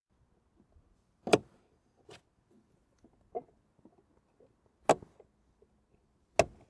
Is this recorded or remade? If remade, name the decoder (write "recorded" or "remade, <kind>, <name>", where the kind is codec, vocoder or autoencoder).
recorded